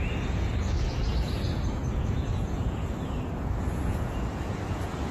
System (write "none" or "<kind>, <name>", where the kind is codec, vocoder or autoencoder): vocoder, Vocos